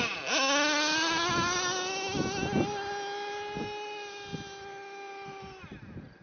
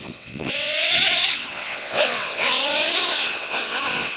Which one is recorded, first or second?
first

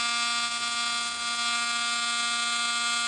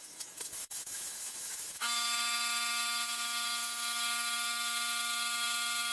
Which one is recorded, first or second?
first